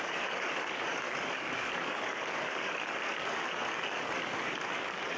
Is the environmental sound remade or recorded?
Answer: remade